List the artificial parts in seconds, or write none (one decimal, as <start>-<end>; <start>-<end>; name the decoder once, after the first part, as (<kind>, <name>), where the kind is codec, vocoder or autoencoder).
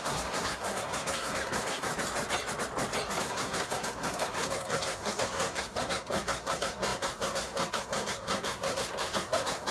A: 0.0-1.9 (codec, SNAC); 3.2-9.7